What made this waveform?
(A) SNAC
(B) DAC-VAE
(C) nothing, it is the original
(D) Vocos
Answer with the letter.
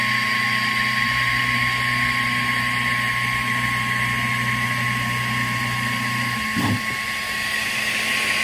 C